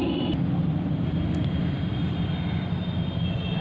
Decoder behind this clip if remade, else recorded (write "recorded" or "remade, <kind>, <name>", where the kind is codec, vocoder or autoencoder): recorded